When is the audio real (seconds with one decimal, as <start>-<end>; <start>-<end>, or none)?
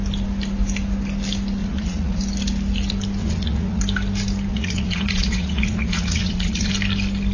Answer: 0.0-1.6; 2.2-3.2; 3.8-4.5; 6.7-7.3